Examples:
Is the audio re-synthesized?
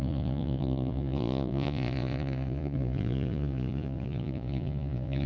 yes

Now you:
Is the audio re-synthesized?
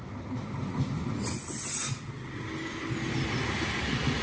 no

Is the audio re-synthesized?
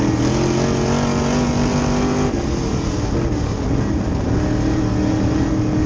no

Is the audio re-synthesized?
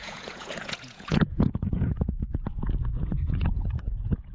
yes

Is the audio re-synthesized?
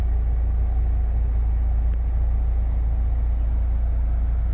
no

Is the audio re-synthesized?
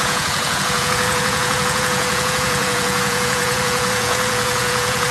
yes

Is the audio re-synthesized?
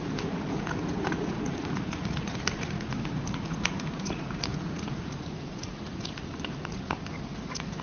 yes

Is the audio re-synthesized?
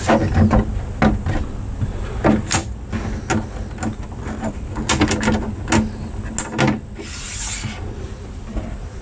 no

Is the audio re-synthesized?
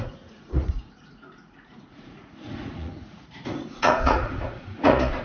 yes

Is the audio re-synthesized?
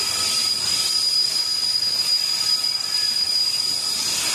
no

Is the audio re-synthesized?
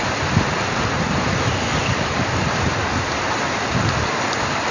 no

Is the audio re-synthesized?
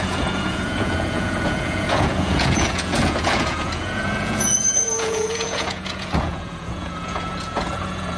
yes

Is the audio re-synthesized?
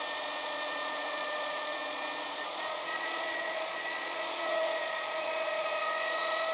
yes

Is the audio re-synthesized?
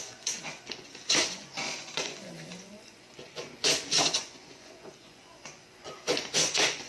yes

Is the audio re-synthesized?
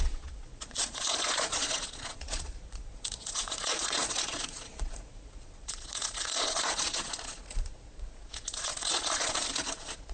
yes